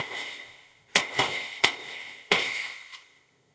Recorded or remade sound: remade